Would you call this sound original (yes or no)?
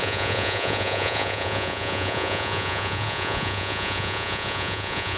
no